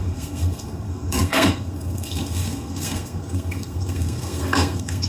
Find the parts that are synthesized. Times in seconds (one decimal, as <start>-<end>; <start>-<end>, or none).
0.0-5.1